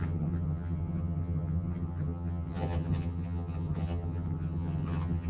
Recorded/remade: remade